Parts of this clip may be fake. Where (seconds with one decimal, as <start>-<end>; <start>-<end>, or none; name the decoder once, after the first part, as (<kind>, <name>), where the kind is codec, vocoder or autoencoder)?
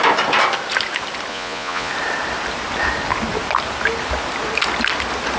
1.3-1.9 (vocoder, Vocos)